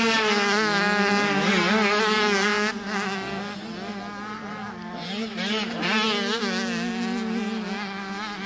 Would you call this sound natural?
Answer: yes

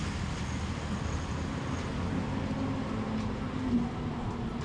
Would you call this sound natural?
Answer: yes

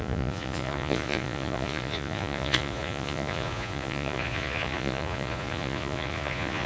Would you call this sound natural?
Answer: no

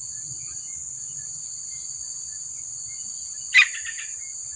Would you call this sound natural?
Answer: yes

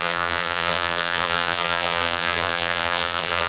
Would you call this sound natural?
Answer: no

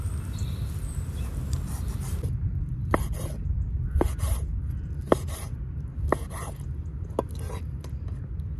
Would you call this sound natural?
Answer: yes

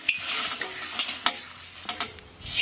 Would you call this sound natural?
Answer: yes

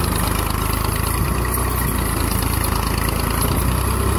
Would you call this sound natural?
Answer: yes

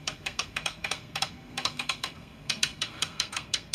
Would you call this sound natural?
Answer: no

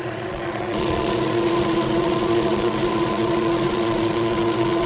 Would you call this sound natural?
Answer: no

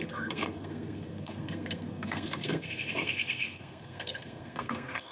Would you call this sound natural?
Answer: no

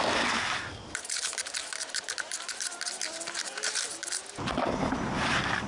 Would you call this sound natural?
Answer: yes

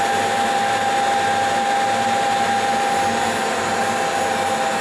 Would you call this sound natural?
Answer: yes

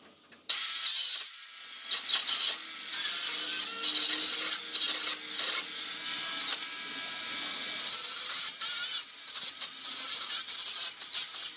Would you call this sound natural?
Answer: yes